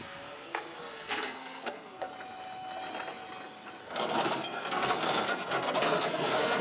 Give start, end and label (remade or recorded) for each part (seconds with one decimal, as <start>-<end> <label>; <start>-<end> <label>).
0.0-2.1 remade; 2.1-3.8 recorded; 3.8-6.6 remade